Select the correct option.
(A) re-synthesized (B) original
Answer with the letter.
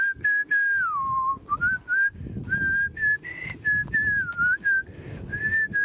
B